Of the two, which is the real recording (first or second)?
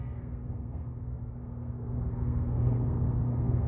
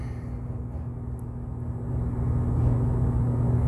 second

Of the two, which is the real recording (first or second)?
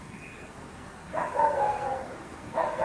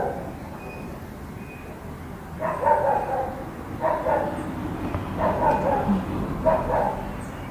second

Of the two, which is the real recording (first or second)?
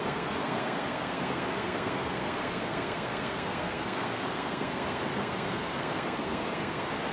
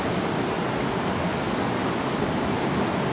second